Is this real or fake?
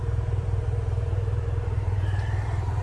fake